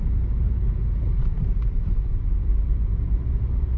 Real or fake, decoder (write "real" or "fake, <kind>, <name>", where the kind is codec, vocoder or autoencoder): fake, vocoder, BigVGAN v2